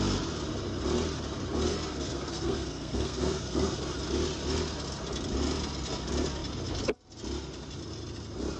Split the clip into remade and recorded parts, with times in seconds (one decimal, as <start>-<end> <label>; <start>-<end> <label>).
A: 0.0-1.7 recorded; 1.7-3.8 remade; 3.8-8.6 recorded